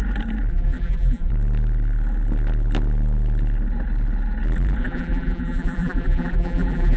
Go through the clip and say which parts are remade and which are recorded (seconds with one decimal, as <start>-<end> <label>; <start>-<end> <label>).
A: 0.0-0.5 recorded; 0.5-1.3 remade; 1.3-4.8 recorded; 4.8-7.0 remade